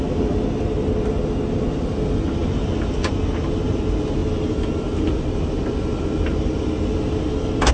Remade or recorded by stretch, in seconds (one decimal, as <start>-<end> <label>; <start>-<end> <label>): 0.0-2.4 recorded; 2.4-3.1 remade; 3.1-7.7 recorded

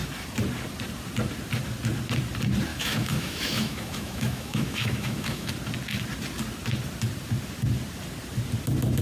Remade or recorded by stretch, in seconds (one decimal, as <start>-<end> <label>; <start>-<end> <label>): 0.0-2.7 recorded; 2.7-5.5 remade; 5.5-9.0 recorded